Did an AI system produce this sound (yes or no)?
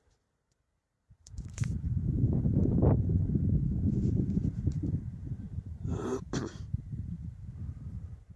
yes